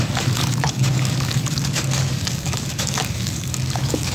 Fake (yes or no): yes